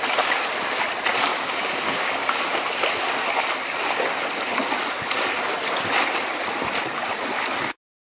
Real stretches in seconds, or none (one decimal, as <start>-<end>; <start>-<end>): 0.0-1.3; 2.4-8.2